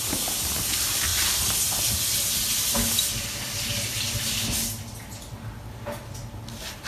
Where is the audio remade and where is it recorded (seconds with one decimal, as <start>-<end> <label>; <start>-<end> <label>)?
0.0-1.1 recorded; 1.1-4.4 remade; 4.4-6.9 recorded